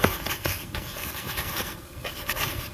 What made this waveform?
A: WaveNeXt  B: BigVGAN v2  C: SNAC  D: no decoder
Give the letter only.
C